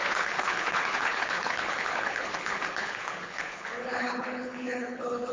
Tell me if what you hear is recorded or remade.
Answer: remade